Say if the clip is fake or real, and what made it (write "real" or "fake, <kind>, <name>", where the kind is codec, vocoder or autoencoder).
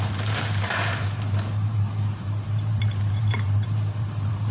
fake, vocoder, BigVGAN v2